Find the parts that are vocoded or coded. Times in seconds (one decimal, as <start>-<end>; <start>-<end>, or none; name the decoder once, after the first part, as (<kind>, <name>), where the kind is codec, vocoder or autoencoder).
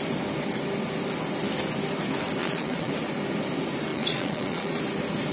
2.4-2.9 (vocoder, Vocos); 3.9-4.8